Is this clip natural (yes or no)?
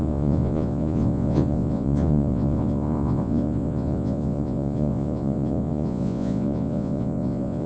no